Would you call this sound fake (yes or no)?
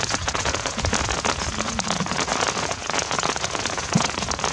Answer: yes